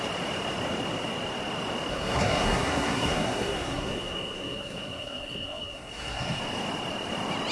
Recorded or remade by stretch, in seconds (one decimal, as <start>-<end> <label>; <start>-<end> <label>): 0.0-1.9 recorded; 1.9-6.4 remade; 6.4-7.5 recorded